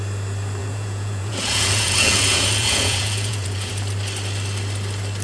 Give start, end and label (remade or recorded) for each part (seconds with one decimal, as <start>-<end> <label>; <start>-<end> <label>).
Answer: 0.0-0.6 recorded; 0.6-3.7 remade; 3.7-5.2 recorded